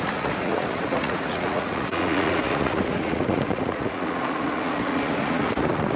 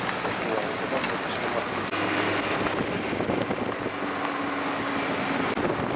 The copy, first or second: first